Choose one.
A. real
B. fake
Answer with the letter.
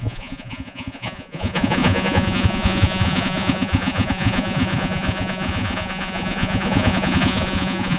B